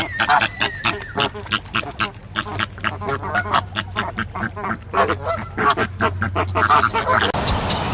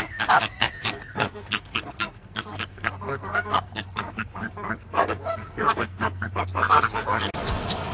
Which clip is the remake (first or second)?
second